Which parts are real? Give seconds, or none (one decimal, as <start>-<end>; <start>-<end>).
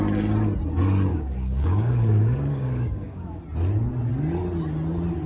0.0-1.1; 3.4-5.3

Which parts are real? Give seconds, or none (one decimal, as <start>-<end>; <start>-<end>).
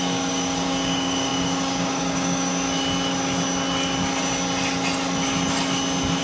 2.5-6.2